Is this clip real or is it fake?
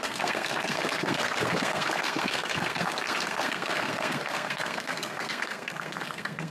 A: fake